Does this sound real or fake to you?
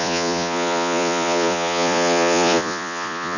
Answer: fake